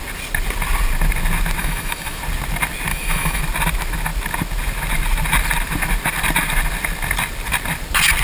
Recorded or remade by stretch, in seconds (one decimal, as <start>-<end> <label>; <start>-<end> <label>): 0.0-1.6 recorded; 1.6-2.2 remade; 2.2-2.9 recorded; 2.9-3.4 remade; 3.4-8.2 recorded